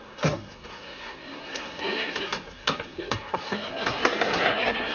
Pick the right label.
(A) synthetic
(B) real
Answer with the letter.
A